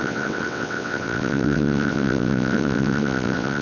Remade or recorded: remade